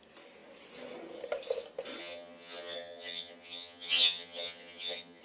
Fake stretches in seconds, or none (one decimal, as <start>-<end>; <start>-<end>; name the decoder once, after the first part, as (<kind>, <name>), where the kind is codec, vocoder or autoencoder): 2.0-5.2 (vocoder, HiFi-GAN)